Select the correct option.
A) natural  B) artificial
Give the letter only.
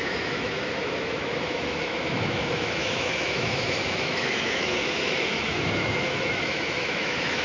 B